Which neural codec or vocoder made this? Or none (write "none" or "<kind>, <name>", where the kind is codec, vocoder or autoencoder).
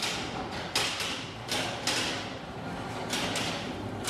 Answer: none